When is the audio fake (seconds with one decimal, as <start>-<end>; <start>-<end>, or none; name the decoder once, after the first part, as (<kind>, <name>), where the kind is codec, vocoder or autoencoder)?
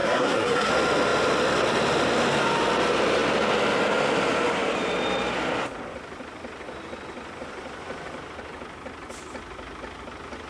0.0-0.7 (codec, SNAC)